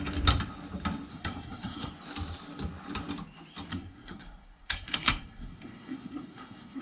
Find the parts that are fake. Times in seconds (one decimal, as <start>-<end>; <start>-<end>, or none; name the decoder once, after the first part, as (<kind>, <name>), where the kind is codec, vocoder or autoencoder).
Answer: 1.1-1.9 (codec, SNAC); 3.7-6.8